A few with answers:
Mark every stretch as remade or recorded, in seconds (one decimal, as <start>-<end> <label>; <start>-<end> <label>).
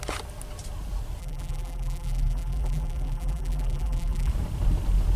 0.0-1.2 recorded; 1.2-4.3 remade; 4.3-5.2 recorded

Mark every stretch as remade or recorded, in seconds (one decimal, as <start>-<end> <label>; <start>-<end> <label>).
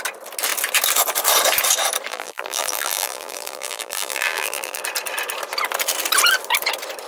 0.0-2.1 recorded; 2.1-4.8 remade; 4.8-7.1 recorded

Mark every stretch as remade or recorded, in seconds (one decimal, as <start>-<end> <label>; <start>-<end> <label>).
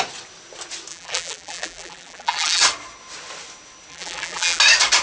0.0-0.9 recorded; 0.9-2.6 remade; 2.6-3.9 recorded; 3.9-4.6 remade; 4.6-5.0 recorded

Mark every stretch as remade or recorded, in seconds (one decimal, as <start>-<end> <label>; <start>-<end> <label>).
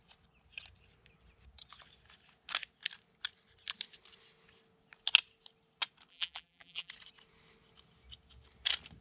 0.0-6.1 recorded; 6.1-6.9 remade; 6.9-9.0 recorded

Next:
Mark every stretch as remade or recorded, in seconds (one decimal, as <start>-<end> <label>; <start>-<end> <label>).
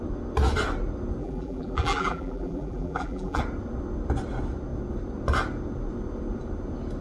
0.0-1.2 recorded; 1.2-3.4 remade; 3.4-7.0 recorded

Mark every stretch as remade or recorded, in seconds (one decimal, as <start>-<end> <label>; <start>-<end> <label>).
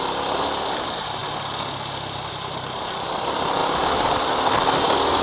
0.0-1.2 remade; 1.2-2.3 recorded; 2.3-3.6 remade; 3.6-5.2 recorded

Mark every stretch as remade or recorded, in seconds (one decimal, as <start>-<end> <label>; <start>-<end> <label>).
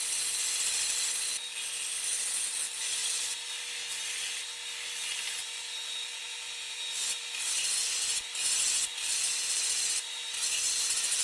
0.0-3.0 recorded; 3.0-3.7 remade; 3.7-5.4 recorded; 5.4-6.2 remade; 6.2-11.2 recorded